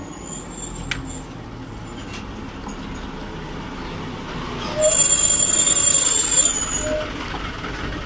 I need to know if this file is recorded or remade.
recorded